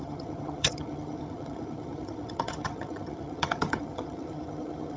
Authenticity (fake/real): fake